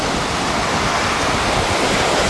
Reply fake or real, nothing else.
real